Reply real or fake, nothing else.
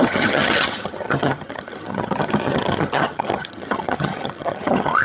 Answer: fake